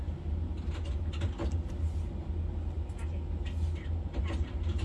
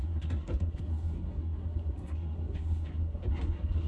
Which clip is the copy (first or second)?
second